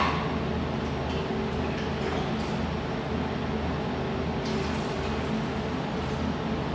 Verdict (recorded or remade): recorded